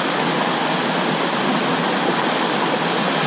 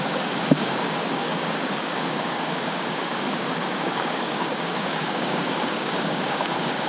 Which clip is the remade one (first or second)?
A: second